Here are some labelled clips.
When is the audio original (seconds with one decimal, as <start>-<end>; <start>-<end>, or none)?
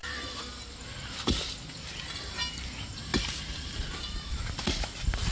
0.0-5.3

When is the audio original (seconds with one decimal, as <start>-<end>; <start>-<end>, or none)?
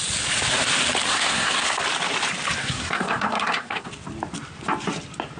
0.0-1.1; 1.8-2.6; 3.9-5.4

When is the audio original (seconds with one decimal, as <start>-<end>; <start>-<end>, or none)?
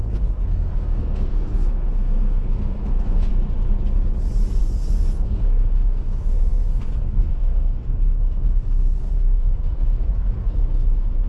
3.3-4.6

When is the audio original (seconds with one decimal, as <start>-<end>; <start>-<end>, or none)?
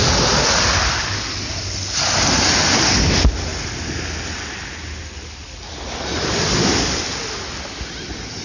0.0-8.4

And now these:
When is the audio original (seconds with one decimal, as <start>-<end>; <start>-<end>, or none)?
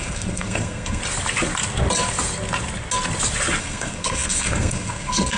1.0-3.6